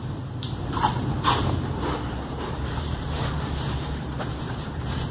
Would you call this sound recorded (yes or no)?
no